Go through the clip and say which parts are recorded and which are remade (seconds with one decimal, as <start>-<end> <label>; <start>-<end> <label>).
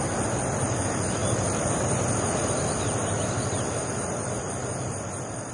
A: 0.0-5.5 recorded